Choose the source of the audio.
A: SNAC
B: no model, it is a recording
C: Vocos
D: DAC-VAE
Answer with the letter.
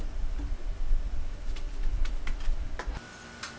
B